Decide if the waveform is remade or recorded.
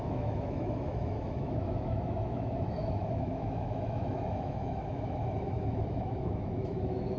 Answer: remade